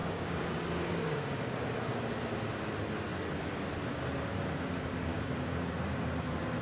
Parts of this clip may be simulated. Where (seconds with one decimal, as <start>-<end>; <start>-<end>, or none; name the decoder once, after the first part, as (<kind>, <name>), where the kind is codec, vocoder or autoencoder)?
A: 0.0-1.6 (codec, DAC); 5.1-5.7